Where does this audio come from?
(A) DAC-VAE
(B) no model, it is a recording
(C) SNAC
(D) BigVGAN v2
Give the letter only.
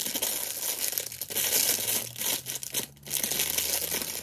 B